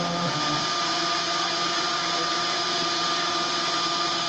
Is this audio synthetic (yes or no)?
yes